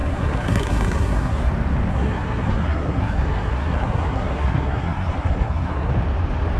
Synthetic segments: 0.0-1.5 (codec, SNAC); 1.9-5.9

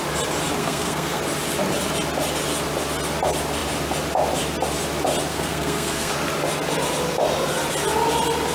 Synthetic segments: 0.6-1.2 (codec, SNAC); 5.3-6.1

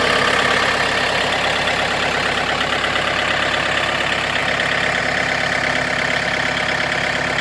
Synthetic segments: none

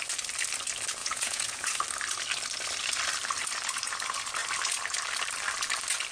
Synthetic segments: 1.0-1.8 (vocoder, Vocos)